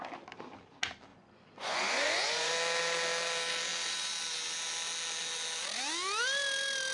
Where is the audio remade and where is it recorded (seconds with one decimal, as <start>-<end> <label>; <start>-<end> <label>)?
0.0-1.1 recorded; 1.1-2.5 remade; 2.5-6.9 recorded